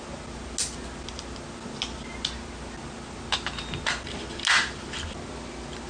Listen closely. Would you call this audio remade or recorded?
recorded